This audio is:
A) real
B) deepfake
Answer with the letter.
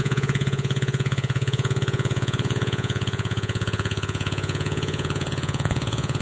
B